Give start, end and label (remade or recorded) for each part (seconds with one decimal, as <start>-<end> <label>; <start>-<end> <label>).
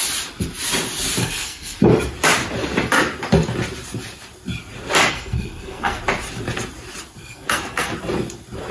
0.0-1.2 recorded; 1.2-1.8 remade; 1.8-5.1 recorded; 5.1-6.0 remade; 6.0-7.2 recorded; 7.2-7.9 remade; 7.9-8.7 recorded